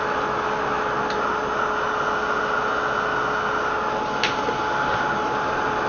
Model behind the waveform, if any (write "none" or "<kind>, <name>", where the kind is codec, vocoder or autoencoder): none